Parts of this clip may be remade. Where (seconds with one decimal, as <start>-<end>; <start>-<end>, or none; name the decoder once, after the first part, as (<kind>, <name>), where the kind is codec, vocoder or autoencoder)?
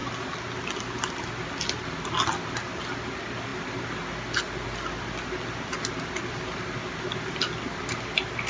none